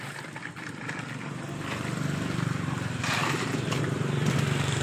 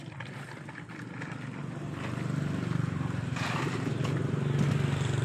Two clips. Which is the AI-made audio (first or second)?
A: first